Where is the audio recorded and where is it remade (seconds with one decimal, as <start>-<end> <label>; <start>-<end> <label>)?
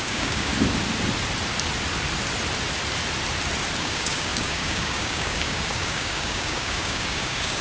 0.0-0.5 remade; 0.5-3.8 recorded; 3.8-7.6 remade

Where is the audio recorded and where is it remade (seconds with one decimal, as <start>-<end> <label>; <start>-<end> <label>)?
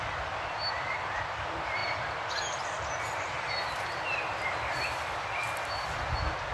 0.0-6.5 recorded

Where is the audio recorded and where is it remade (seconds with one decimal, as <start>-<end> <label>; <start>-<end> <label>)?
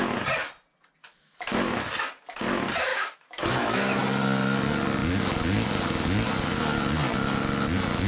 0.0-1.0 recorded; 1.0-1.8 remade; 1.8-2.9 recorded; 2.9-4.0 remade; 4.0-8.1 recorded